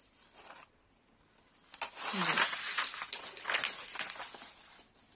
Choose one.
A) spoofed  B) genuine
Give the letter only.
B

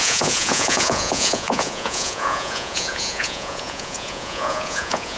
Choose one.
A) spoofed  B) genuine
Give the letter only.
A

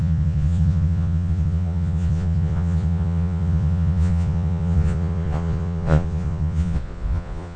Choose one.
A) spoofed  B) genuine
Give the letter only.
A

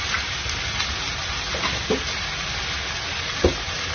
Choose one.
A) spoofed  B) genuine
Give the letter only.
B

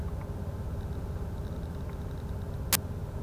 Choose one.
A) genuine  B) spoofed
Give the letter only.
A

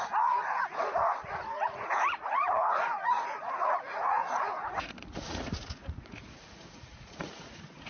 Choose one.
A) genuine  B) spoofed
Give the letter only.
B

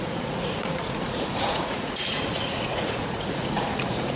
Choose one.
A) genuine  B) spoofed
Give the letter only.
B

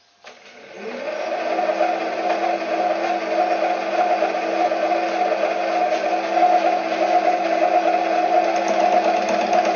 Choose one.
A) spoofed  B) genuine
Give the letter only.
B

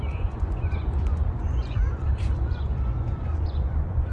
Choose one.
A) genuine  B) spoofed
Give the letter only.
B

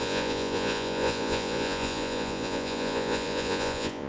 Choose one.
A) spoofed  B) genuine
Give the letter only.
A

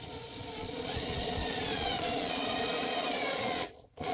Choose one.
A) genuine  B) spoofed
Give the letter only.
B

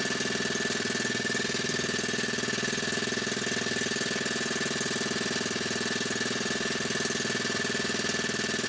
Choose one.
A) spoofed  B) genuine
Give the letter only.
B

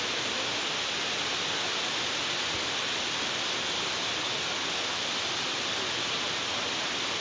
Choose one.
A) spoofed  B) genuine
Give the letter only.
B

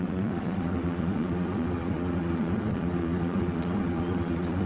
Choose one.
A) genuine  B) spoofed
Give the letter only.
B